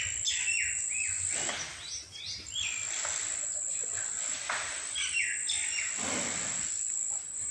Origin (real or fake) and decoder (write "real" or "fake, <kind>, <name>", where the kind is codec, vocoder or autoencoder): real